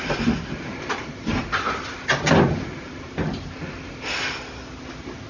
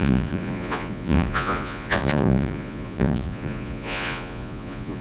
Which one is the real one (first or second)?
first